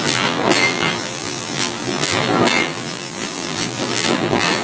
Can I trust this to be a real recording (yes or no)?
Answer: no